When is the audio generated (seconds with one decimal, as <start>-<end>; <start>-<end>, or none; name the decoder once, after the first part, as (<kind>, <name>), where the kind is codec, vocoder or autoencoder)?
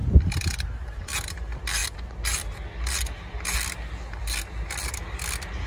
none